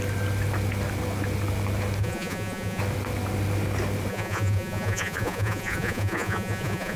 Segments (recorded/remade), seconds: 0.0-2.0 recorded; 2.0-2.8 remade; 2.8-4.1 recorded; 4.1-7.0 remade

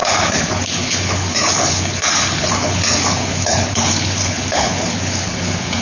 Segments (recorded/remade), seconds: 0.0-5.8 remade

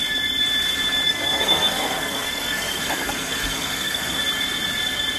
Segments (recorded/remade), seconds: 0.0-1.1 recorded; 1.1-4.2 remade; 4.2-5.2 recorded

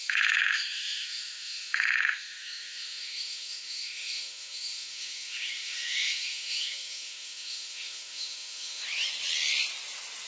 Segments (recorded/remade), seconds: 0.0-8.8 remade; 8.8-10.3 recorded

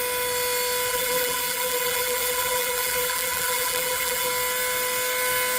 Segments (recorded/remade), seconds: 0.0-0.9 recorded; 0.9-4.3 remade; 4.3-5.6 recorded

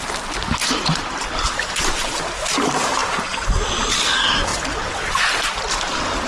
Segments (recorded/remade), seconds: 0.0-0.6 recorded; 0.6-2.2 remade; 2.2-6.3 recorded

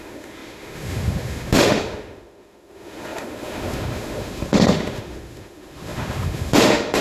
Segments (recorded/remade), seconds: 0.0-7.0 remade

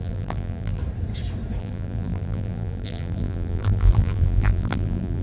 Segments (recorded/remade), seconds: 0.0-0.8 remade; 0.8-1.6 recorded; 1.6-5.2 remade